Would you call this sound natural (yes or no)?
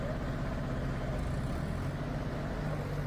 yes